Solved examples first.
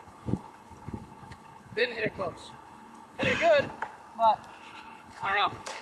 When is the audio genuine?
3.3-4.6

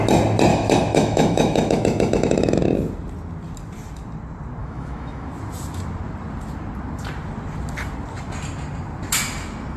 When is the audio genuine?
0.0-0.5; 2.6-4.6; 5.3-9.8

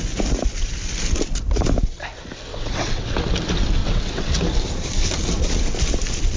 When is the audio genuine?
0.0-2.5; 3.0-3.8; 4.4-6.4

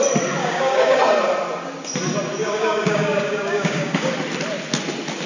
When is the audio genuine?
0.0-0.4; 1.0-2.4; 4.1-5.3

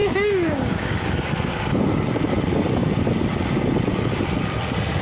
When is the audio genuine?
1.3-5.0

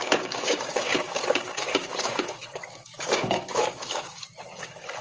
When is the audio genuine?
none